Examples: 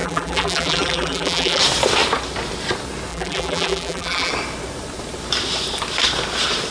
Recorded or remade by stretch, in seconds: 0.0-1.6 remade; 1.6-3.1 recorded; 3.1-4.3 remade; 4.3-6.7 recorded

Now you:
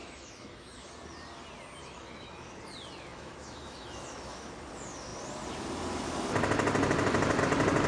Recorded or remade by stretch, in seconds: 0.0-0.9 remade; 0.9-1.8 recorded; 1.8-2.6 remade; 2.6-3.1 recorded; 3.1-4.5 remade; 4.5-7.9 recorded

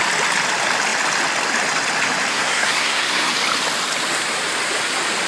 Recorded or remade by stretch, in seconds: 0.0-2.3 recorded; 2.3-3.3 remade; 3.3-5.3 recorded

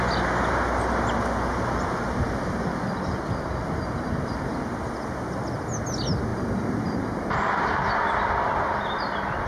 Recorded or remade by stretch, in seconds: 0.0-6.3 recorded; 6.3-7.9 remade; 7.9-9.5 recorded

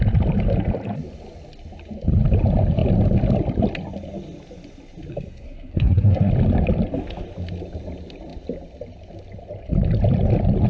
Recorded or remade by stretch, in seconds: 0.0-5.1 recorded; 5.1-6.3 remade; 6.3-10.7 recorded